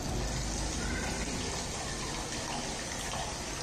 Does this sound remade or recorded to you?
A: recorded